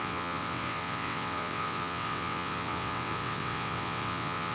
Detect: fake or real fake